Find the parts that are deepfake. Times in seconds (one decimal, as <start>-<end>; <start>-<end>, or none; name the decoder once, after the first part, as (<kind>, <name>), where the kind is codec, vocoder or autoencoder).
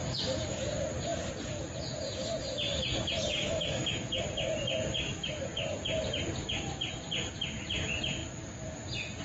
0.0-0.6 (codec, DAC); 3.4-4.2